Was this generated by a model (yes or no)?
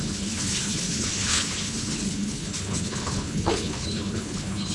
yes